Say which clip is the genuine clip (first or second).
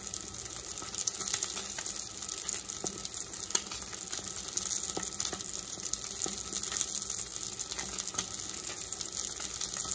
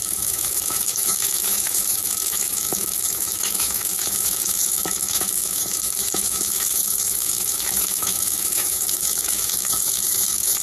first